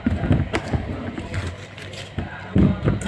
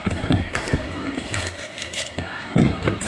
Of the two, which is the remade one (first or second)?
second